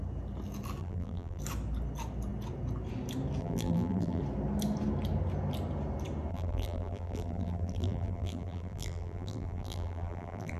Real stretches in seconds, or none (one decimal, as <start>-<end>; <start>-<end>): 0.0-0.8; 1.4-3.4; 4.2-6.3